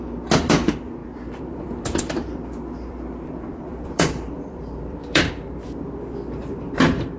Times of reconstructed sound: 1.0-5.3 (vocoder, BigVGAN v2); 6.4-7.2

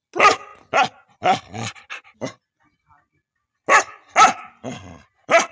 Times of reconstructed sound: none

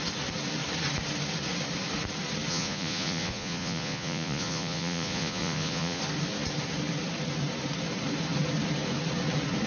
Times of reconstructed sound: 2.5-6.0 (vocoder, Vocos)

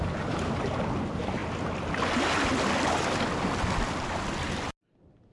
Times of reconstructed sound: none

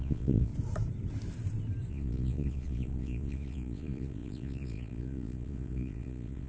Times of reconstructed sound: 0.0-0.5 (vocoder, Vocos); 1.9-6.5

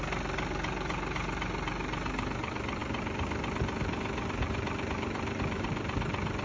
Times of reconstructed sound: none

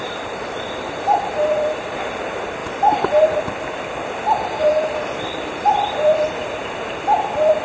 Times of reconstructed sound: 0.0-7.6 (vocoder, BigVGAN v2)